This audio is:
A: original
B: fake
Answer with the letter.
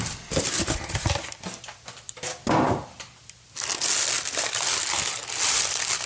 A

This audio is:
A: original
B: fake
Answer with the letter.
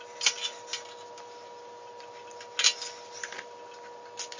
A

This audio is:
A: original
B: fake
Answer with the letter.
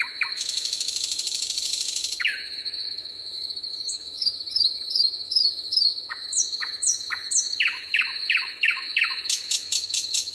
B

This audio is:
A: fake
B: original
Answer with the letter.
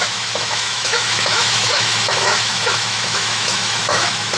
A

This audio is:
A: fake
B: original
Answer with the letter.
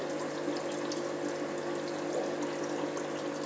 B